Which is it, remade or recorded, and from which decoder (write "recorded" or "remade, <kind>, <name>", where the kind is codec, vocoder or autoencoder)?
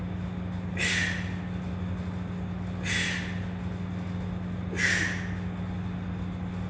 recorded